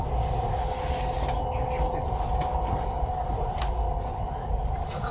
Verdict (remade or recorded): recorded